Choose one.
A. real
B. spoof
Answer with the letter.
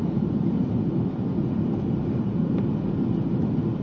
A